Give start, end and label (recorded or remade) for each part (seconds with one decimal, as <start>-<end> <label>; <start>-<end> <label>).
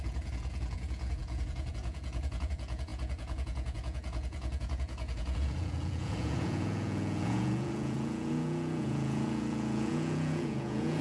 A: 0.0-11.0 remade